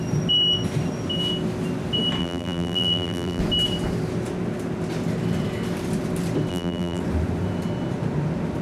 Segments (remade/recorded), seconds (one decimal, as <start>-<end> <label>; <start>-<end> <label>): 0.0-2.2 recorded; 2.2-3.4 remade; 3.4-6.5 recorded; 6.5-7.0 remade; 7.0-8.6 recorded